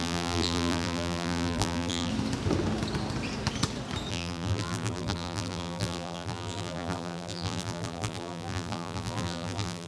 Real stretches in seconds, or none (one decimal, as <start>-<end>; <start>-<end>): 2.1-4.1